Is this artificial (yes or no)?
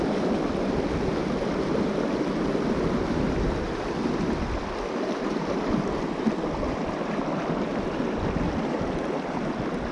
no